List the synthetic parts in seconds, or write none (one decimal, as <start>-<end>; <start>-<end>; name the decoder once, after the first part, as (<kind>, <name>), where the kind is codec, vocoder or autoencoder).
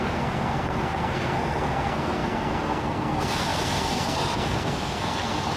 0.0-5.6 (codec, SNAC)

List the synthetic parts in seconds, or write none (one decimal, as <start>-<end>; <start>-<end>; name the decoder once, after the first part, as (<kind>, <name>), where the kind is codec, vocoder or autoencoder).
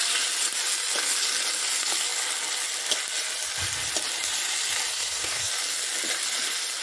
4.9-5.5 (codec, SNAC)